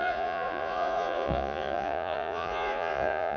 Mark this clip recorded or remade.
remade